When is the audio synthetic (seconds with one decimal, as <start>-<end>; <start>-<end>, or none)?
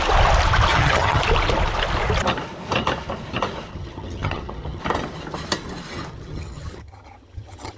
0.7-1.2; 3.7-4.8; 6.1-7.8